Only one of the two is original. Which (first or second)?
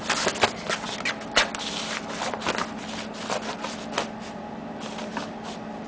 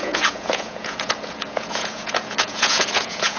first